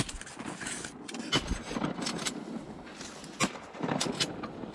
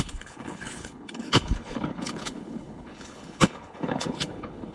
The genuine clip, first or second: first